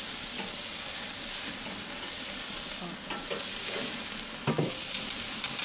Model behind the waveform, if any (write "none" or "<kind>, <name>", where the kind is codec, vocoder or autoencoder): none